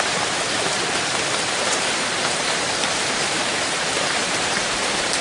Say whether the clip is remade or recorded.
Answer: remade